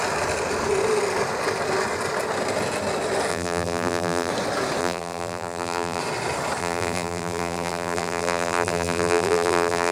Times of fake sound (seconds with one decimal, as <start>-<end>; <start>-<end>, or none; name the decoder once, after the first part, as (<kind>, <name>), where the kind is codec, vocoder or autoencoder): 3.3-4.3 (vocoder, BigVGAN v2); 4.8-6.0; 6.6-9.9